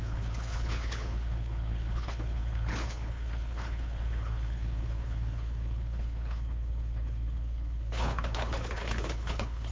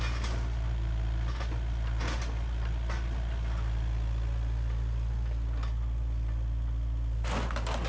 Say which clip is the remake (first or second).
first